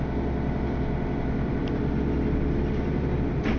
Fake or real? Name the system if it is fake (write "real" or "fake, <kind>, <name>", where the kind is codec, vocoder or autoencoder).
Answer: real